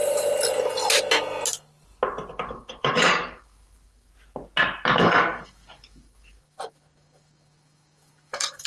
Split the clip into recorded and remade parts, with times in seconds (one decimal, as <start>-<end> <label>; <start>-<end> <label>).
0.0-2.3 recorded; 2.3-4.1 remade; 4.1-5.0 recorded; 5.0-8.7 remade